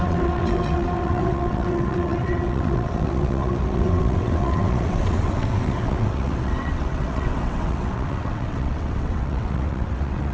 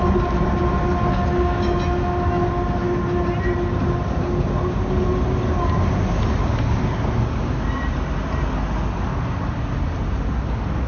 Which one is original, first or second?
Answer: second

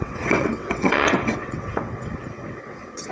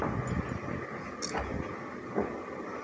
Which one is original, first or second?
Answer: second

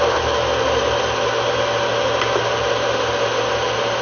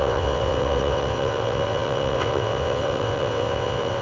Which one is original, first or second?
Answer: first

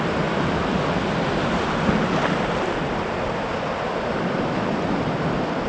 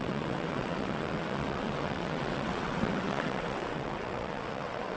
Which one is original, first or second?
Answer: first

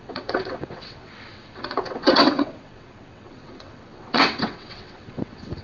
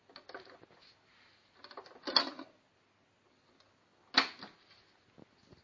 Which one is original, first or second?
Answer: second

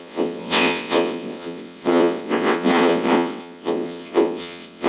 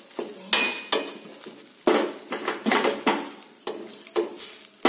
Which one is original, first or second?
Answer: second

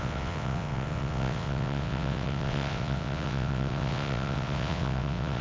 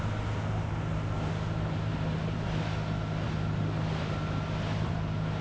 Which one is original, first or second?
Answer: second